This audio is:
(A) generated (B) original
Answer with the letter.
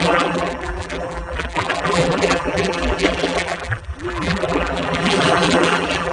A